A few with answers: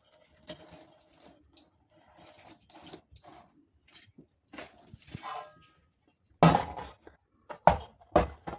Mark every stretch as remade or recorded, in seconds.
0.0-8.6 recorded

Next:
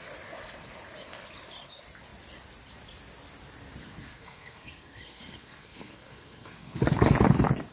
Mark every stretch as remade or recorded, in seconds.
0.0-3.8 recorded; 3.8-6.8 remade; 6.8-7.7 recorded

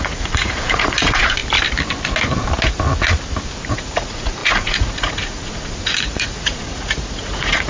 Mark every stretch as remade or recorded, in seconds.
0.0-1.4 remade; 1.4-3.7 recorded; 3.7-7.7 remade

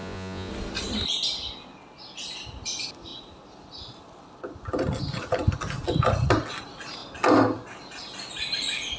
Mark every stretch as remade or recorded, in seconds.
0.0-0.5 remade; 0.5-9.0 recorded

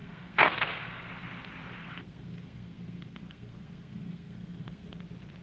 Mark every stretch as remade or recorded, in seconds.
0.0-1.1 remade; 1.1-1.8 recorded; 1.8-5.0 remade; 5.0-5.4 recorded